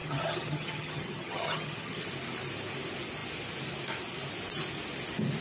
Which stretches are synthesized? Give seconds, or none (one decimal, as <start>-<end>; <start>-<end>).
0.0-2.0